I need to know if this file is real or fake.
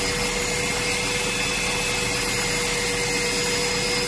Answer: real